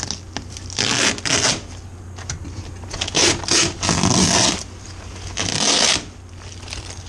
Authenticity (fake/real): real